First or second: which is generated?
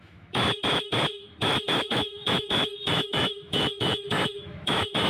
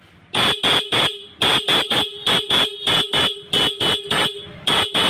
first